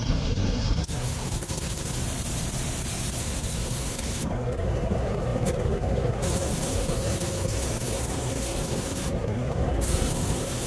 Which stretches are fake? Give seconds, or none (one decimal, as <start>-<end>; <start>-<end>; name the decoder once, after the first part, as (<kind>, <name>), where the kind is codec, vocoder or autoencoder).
0.0-2.0 (codec, SNAC); 3.2-10.7